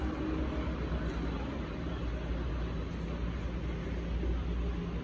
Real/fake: real